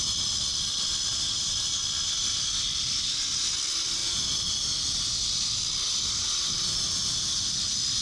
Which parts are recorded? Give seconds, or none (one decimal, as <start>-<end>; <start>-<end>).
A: 0.0-0.5; 2.2-8.0